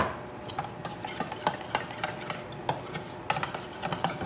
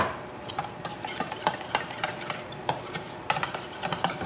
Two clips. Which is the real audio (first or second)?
first